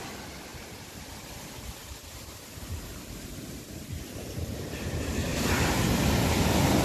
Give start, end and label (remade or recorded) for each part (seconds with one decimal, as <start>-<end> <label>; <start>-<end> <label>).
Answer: 0.0-6.8 recorded